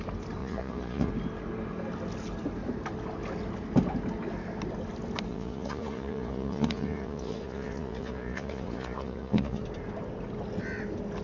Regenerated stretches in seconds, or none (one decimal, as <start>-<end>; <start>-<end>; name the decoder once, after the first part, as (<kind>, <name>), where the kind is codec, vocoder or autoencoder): 0.4-1.1 (vocoder, Vocos); 5.3-9.6